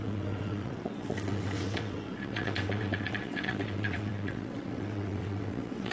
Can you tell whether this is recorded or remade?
remade